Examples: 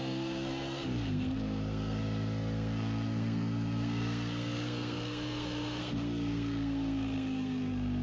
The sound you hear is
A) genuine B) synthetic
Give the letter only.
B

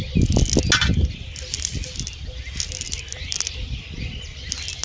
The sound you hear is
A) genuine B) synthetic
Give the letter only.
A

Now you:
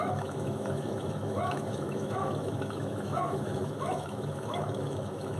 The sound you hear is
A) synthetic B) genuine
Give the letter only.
A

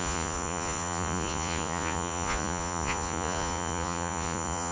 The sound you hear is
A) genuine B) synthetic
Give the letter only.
B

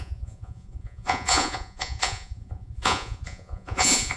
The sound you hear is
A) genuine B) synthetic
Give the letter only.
B